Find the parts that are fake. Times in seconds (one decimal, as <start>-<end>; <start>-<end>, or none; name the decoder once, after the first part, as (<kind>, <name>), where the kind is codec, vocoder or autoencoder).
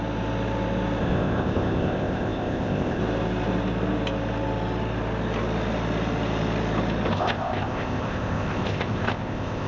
1.0-3.0 (codec, ZipCodec); 7.1-9.7